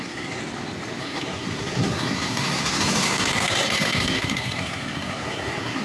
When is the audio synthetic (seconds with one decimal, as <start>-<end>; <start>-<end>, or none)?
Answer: 0.0-0.4; 1.0-5.8